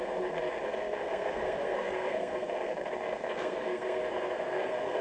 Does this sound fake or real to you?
fake